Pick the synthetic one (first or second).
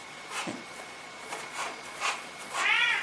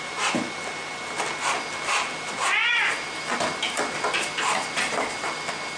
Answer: first